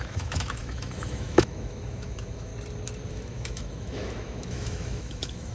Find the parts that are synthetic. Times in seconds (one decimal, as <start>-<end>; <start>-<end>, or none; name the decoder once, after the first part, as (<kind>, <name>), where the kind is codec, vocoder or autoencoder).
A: 0.0-2.5 (autoencoder, DAC-VAE); 3.1-5.5